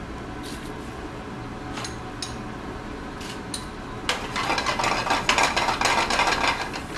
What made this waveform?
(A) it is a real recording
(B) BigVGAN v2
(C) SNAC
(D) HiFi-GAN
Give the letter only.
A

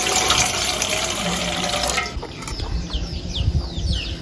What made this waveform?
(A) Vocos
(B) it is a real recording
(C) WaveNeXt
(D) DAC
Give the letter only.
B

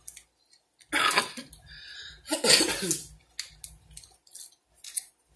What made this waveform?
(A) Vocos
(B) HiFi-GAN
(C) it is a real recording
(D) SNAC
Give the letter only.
C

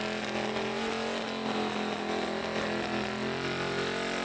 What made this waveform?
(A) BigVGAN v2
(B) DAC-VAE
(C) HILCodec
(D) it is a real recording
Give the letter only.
D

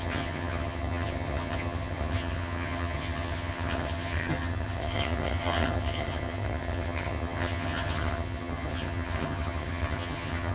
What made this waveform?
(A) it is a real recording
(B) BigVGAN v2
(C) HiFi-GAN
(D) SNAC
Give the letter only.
C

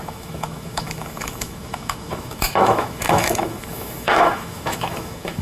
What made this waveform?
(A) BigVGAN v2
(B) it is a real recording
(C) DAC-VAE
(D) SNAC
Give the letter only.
C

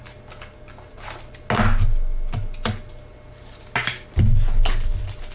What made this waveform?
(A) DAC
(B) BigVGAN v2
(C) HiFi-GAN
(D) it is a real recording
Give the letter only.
D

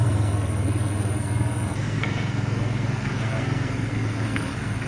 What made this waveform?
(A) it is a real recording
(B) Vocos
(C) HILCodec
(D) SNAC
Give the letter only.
D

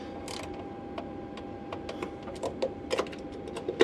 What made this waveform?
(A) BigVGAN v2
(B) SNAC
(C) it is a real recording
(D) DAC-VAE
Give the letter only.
C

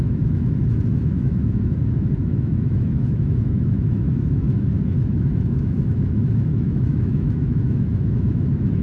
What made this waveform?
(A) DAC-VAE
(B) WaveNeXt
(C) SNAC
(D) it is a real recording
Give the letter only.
A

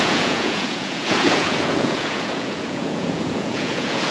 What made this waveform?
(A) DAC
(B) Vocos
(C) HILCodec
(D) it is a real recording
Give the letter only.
B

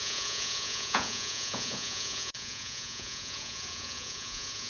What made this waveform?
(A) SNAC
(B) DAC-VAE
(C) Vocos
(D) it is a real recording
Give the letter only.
C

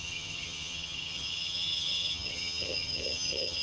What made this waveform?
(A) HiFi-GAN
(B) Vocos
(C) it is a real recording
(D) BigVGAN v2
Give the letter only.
A